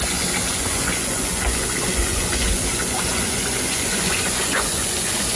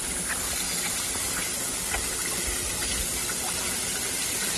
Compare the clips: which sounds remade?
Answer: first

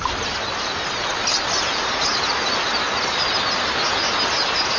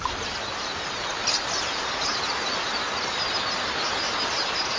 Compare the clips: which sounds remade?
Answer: second